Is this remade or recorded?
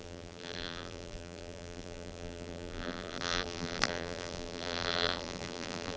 remade